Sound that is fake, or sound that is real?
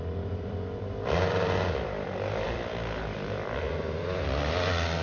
fake